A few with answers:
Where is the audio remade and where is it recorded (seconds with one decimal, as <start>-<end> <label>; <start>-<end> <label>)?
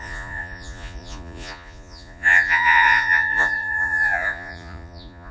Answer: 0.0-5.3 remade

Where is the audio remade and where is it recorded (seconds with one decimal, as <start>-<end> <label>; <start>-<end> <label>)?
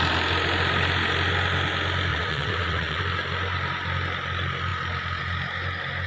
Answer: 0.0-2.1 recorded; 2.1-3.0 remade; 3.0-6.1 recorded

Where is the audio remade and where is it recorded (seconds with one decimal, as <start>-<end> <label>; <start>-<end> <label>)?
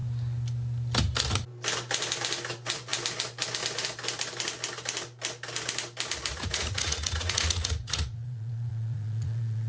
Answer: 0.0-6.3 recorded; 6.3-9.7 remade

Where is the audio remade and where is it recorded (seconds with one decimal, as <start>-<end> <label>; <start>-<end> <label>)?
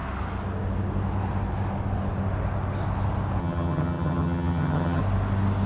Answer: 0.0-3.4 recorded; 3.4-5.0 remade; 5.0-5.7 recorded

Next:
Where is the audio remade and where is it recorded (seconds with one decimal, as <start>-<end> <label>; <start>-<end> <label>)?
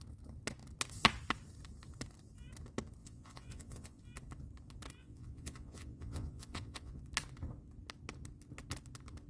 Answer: 0.0-3.0 recorded; 3.0-4.0 remade; 4.0-5.0 recorded; 5.0-7.0 remade; 7.0-9.3 recorded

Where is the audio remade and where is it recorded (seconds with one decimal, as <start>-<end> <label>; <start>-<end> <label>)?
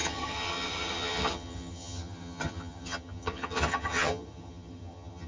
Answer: 0.0-5.3 remade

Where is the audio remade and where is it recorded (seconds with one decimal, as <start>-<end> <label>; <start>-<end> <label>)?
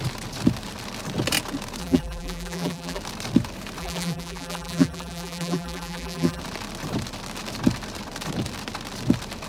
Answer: 0.0-1.8 recorded; 1.8-3.0 remade; 3.0-3.8 recorded; 3.8-6.4 remade; 6.4-9.5 recorded